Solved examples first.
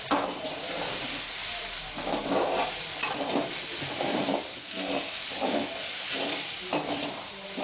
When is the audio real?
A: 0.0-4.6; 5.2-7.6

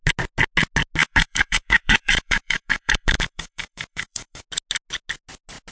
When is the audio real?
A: 0.0-1.0; 4.4-5.7

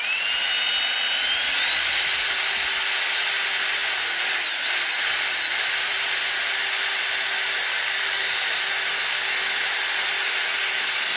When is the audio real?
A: 0.0-7.7; 8.6-11.2